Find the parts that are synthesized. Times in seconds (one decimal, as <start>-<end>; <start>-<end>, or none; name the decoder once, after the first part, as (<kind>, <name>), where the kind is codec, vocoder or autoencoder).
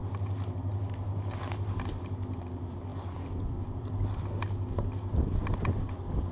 2.9-4.2 (vocoder, BigVGAN v2)